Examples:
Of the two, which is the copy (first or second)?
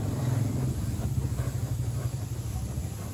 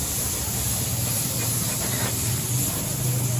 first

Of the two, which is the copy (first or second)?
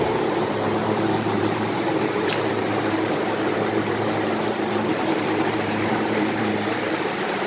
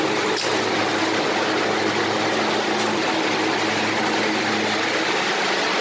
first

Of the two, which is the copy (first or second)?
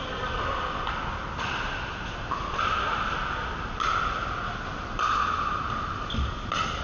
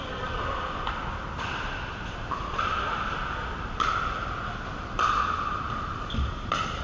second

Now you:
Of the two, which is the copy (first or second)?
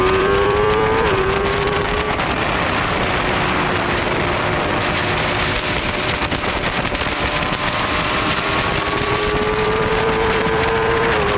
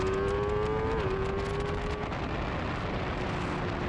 first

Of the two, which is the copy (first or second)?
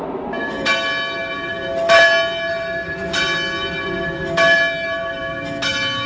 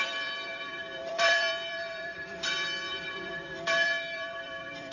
second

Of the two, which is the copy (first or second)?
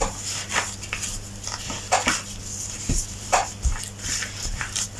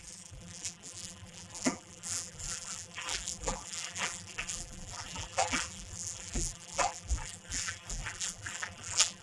second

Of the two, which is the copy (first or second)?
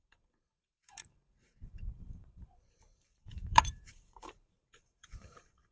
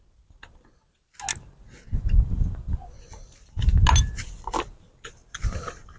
first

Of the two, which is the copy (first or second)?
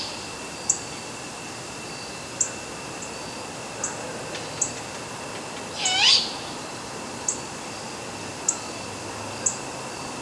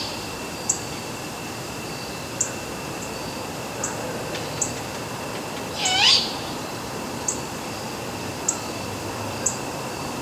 second